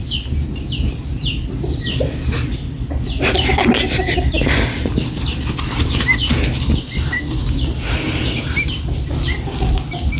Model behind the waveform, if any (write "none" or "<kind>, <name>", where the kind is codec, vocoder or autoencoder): none